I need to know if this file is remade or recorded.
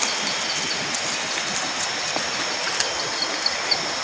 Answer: recorded